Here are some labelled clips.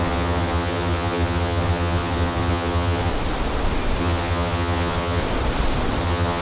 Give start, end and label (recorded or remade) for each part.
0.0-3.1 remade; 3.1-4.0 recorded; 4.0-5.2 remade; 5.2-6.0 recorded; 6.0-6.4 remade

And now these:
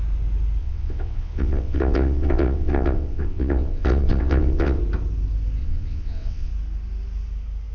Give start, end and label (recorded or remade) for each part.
0.0-0.6 recorded; 0.6-4.8 remade; 4.8-5.6 recorded; 5.6-6.5 remade; 6.5-7.7 recorded

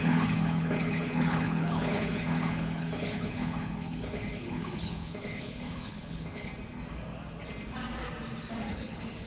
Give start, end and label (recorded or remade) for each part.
0.0-6.5 remade; 6.5-8.7 recorded; 8.7-9.3 remade

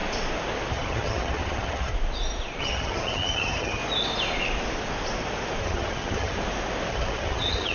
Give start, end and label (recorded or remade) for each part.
0.0-0.7 recorded; 0.7-1.9 remade; 1.9-2.6 recorded; 2.6-3.8 remade; 3.8-5.6 recorded; 5.6-6.4 remade; 6.4-6.9 recorded; 6.9-7.7 remade

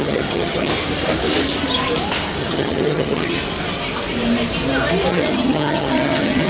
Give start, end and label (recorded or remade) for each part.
0.0-0.7 remade; 0.7-2.4 recorded; 2.4-3.4 remade; 3.4-5.1 recorded; 5.1-6.5 remade

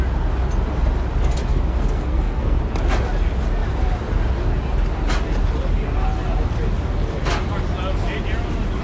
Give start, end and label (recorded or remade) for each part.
0.0-1.5 recorded; 1.5-2.6 remade; 2.6-8.8 recorded

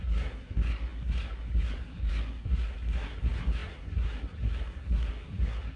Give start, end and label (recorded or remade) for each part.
0.0-5.8 remade